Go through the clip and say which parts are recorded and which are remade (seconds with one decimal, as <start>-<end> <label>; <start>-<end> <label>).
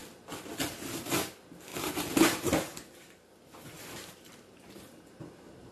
0.0-1.7 recorded; 1.7-5.1 remade; 5.1-5.7 recorded